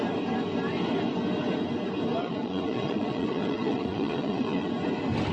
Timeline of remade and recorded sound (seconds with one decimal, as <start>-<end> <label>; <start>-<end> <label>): 0.0-2.2 recorded; 2.2-4.7 remade; 4.7-5.3 recorded